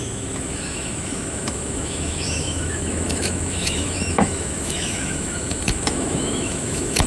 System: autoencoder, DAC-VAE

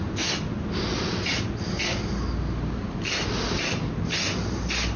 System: none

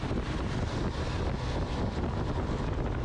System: none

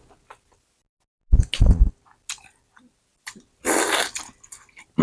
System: none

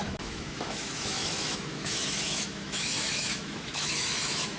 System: autoencoder, DAC-VAE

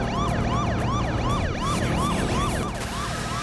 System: none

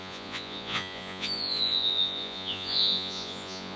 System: vocoder, Vocos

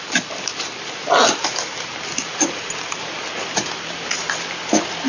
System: none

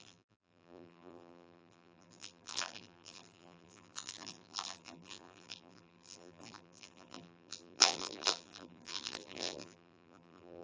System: vocoder, BigVGAN v2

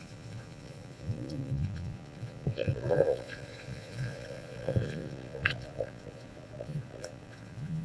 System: vocoder, Vocos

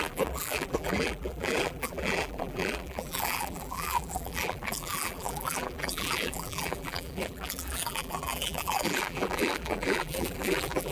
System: vocoder, BigVGAN v2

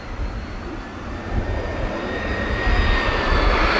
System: none